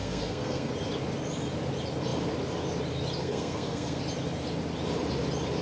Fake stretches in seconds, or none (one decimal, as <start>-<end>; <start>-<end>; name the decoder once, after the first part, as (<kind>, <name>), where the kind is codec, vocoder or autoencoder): 0.0-0.7 (codec, SNAC); 3.2-4.0